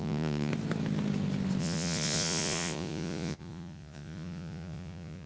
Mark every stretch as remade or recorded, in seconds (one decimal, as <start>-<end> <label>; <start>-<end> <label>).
0.0-0.5 remade; 0.5-1.6 recorded; 1.6-5.3 remade